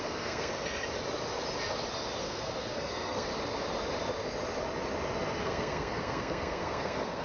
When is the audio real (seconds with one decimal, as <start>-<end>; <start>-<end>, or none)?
0.5-2.2; 3.3-5.4